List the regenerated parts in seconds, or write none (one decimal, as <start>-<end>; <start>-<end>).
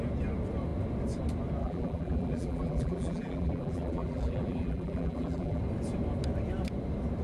1.6-5.6